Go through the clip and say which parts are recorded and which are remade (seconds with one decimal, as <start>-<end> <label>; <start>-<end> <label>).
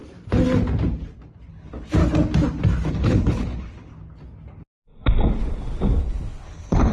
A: 0.0-1.5 recorded; 1.5-2.0 remade; 2.0-2.9 recorded; 2.9-3.9 remade; 3.9-6.0 recorded; 6.0-6.9 remade